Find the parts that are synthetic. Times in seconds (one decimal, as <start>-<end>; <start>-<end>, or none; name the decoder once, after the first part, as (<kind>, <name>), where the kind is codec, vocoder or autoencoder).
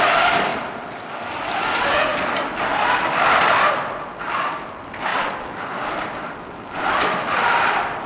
0.5-1.1 (vocoder, BigVGAN v2); 5.1-6.8